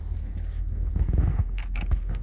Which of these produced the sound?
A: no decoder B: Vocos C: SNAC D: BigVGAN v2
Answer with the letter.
C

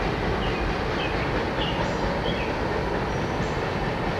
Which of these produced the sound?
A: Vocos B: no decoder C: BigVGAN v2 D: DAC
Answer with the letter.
B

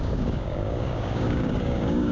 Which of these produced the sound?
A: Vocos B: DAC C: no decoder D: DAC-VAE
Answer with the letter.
B